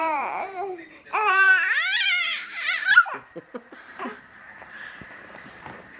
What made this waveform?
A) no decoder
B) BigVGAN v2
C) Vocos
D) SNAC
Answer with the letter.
B